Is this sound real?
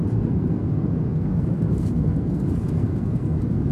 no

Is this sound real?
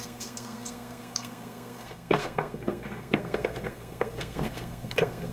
no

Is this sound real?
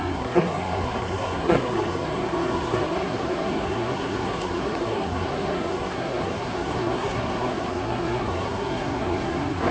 no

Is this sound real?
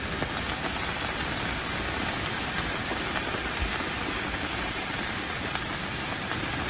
yes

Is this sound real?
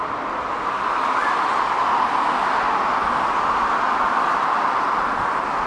yes